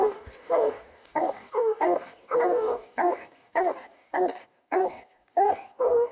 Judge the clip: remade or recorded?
remade